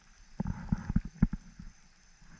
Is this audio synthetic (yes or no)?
no